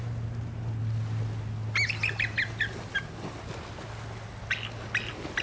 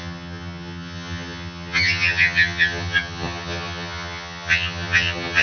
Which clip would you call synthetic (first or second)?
second